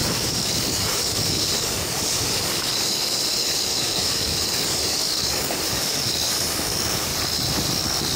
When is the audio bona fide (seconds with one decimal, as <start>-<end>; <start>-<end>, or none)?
7.1-8.2